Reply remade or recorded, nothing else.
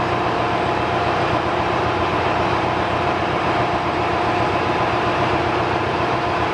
remade